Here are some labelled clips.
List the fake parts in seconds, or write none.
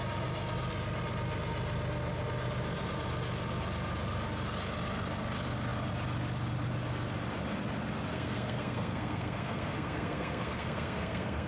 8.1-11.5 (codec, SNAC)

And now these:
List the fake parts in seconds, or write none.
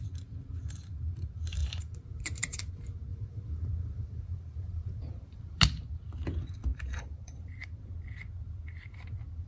1.6-2.7 (vocoder, BigVGAN v2); 3.1-5.6; 6.7-7.8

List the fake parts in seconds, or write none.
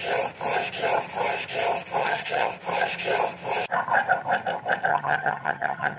2.0-2.5 (vocoder, HiFi-GAN); 4.9-6.0